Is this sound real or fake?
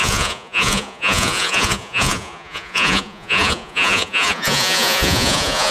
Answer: fake